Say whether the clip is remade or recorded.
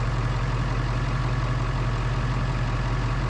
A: recorded